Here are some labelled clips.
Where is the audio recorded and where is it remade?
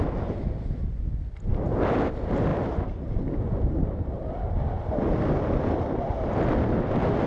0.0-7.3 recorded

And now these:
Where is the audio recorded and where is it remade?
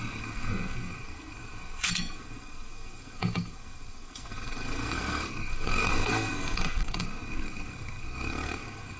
0.0-9.0 remade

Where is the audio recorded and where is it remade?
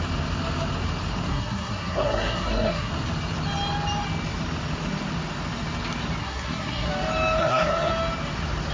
0.0-1.3 recorded; 1.3-2.9 remade; 2.9-6.2 recorded; 6.2-6.9 remade; 6.9-7.4 recorded; 7.4-7.9 remade; 7.9-8.7 recorded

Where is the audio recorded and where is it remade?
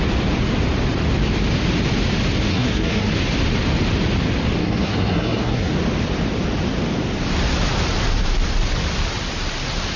0.0-2.5 recorded; 2.5-3.1 remade; 3.1-4.6 recorded; 4.6-5.7 remade; 5.7-10.0 recorded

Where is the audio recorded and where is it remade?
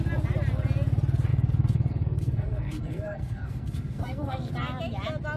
0.0-1.3 recorded; 1.3-4.5 remade; 4.5-5.4 recorded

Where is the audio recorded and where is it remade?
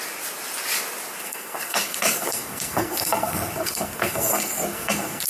0.0-1.2 recorded; 1.2-5.3 remade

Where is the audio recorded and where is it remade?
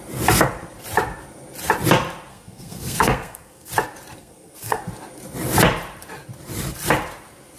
0.0-2.3 recorded; 2.3-3.7 remade; 3.7-4.2 recorded; 4.2-4.8 remade; 4.8-7.6 recorded